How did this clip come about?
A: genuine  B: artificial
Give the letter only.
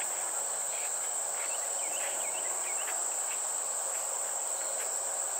A